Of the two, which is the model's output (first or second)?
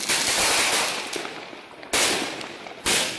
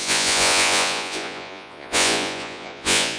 second